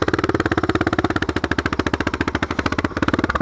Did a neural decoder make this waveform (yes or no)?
yes